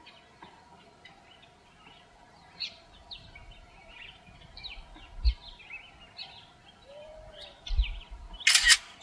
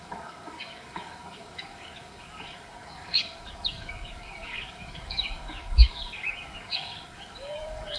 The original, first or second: first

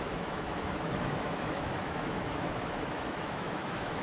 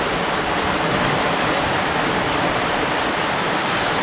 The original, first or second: second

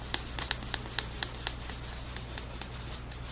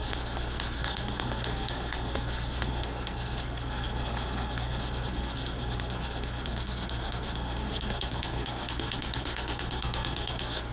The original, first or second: first